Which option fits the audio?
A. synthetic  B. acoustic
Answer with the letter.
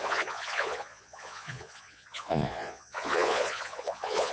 A